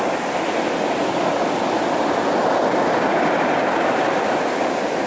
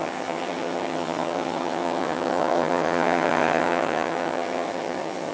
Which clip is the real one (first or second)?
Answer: first